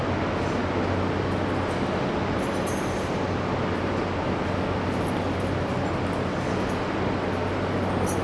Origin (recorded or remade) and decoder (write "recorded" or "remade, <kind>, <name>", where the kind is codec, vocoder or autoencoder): recorded